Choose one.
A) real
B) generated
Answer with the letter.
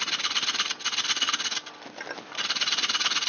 A